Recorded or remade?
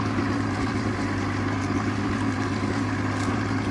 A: recorded